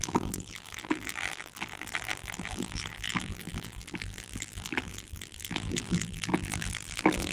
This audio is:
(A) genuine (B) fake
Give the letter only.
B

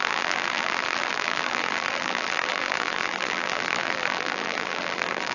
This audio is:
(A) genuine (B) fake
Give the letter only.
B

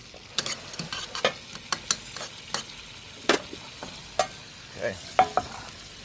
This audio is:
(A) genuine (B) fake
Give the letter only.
A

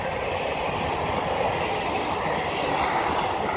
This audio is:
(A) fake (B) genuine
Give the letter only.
B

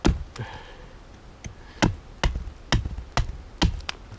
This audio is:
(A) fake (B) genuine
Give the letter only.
B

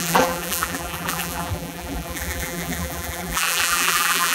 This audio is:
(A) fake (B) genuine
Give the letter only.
A